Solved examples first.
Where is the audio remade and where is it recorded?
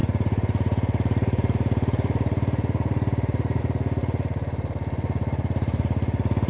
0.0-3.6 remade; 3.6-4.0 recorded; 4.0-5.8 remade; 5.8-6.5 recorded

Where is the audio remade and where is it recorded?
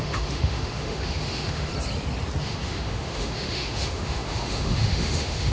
0.0-1.7 remade; 1.7-2.4 recorded; 2.4-5.5 remade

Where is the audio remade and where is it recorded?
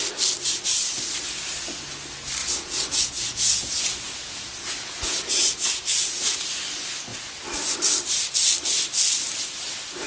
0.0-2.4 recorded; 2.4-6.5 remade; 6.5-10.1 recorded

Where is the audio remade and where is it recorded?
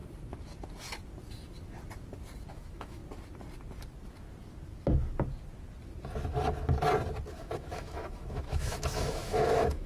0.0-2.5 recorded; 2.5-3.0 remade; 3.0-7.3 recorded; 7.3-9.9 remade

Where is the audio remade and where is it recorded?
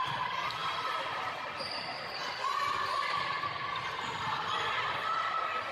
0.0-5.7 recorded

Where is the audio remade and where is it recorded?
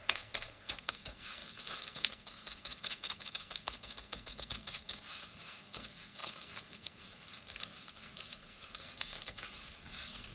0.0-10.3 remade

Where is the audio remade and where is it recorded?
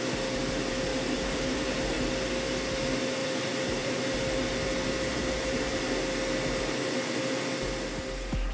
0.0-0.9 recorded; 0.9-2.0 remade; 2.0-3.2 recorded; 3.2-5.7 remade; 5.7-8.5 recorded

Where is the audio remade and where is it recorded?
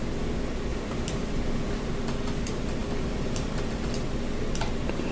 0.0-0.7 recorded; 0.7-1.9 remade; 1.9-2.8 recorded; 2.8-3.9 remade; 3.9-5.1 recorded